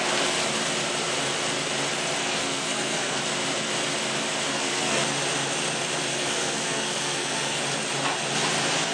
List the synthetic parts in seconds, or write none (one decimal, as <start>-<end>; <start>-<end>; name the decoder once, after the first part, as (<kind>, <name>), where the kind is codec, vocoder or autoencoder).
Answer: 2.2-3.2 (codec, SNAC); 4.5-5.0; 6.1-7.6

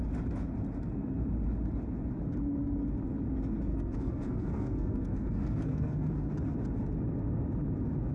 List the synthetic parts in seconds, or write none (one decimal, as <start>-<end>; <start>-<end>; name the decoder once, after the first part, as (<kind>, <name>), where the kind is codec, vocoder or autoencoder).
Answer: 3.7-6.3 (codec, SNAC)

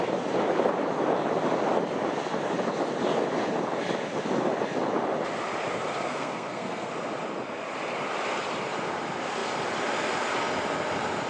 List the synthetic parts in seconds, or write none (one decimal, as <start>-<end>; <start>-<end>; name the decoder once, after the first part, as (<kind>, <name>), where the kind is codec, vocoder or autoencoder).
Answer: 6.1-6.9 (codec, SNAC)

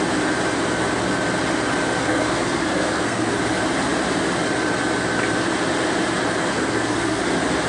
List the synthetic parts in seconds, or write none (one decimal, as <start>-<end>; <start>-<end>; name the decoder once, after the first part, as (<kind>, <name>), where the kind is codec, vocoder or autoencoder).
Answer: 2.0-3.3 (codec, SNAC); 6.4-7.2

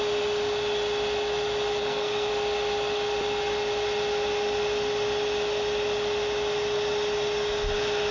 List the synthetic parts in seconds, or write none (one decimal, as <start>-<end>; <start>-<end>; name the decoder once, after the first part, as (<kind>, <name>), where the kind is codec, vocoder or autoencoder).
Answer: 1.8-2.3 (codec, SNAC)

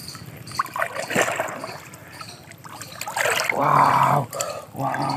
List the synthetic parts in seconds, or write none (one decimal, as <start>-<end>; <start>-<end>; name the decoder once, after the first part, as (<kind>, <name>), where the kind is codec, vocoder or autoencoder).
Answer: none